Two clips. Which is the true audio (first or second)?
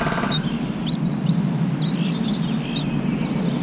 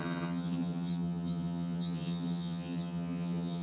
first